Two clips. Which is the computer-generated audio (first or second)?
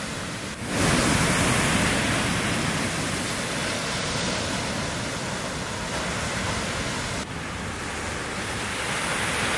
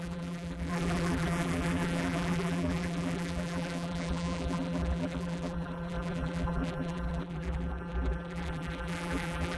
second